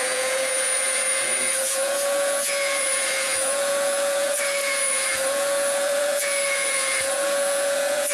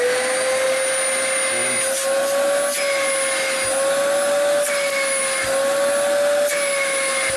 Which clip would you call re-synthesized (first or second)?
first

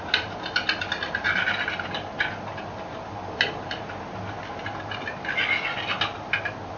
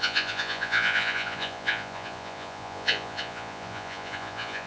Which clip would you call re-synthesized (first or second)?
second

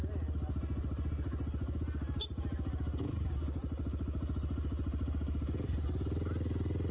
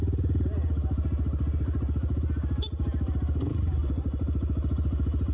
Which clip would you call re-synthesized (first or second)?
second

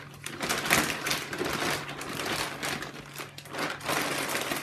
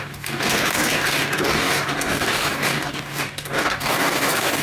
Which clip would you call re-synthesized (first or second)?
second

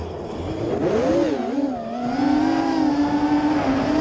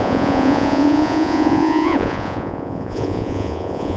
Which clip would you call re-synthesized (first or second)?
second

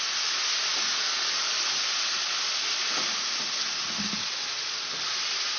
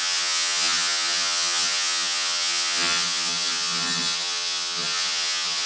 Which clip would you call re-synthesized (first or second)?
second